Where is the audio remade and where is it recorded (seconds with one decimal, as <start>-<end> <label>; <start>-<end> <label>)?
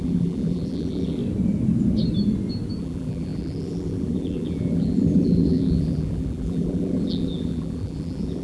0.0-1.2 remade; 1.2-2.8 recorded; 2.8-8.4 remade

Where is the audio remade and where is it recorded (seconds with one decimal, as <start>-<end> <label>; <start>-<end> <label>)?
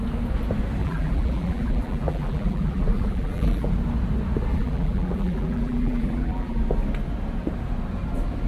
0.0-0.8 recorded; 0.8-3.7 remade; 3.7-4.5 recorded; 4.5-6.6 remade; 6.6-8.5 recorded